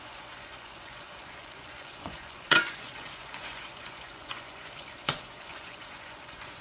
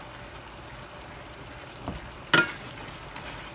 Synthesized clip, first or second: first